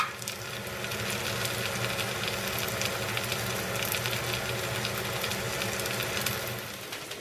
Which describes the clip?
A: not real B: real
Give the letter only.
B